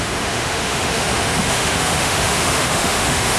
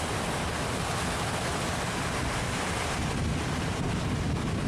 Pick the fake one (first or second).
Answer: first